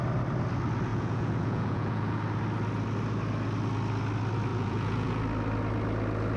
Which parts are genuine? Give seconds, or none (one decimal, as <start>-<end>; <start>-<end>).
0.0-0.9; 2.2-4.5; 5.2-6.4